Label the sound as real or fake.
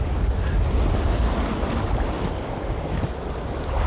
real